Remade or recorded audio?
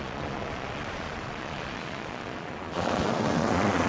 remade